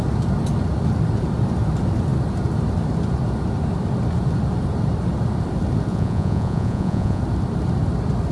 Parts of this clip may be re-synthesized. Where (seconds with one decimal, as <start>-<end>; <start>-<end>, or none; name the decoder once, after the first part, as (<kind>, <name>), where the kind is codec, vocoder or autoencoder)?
5.9-7.2 (vocoder, Vocos)

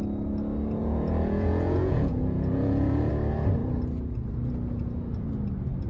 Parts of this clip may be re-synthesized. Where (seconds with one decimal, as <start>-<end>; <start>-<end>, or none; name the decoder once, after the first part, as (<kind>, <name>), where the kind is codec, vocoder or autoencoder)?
0.8-3.1 (vocoder, Vocos)